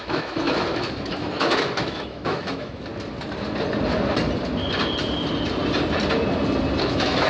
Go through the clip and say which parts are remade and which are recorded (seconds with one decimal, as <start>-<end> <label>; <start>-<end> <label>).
0.0-2.9 remade; 2.9-6.8 recorded; 6.8-7.3 remade